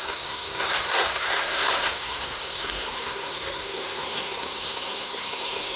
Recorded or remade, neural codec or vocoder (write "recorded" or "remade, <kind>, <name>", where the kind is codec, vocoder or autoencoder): remade, codec, SNAC